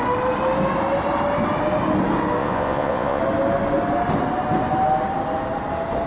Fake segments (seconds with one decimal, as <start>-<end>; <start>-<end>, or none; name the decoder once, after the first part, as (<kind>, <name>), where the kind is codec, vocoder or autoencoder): 2.4-3.2 (vocoder, Vocos)